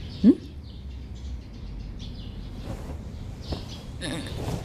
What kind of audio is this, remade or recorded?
remade